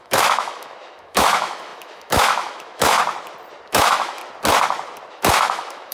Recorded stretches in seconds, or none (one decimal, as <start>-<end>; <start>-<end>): 3.0-3.7; 4.2-5.1